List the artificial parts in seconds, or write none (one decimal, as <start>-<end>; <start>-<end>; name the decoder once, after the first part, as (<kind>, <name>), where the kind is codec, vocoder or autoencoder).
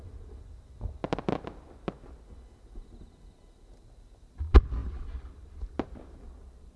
none